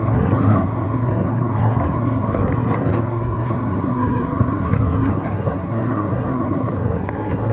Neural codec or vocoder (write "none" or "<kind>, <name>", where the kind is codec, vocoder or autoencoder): codec, SNAC